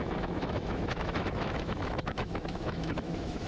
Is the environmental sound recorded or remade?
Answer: remade